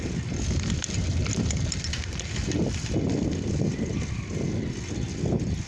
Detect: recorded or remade recorded